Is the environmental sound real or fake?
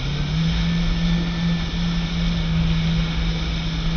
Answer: real